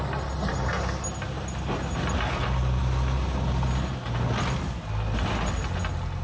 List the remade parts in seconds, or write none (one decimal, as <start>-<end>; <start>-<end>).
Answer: none